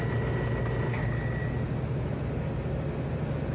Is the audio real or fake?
real